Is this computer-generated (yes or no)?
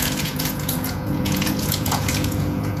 yes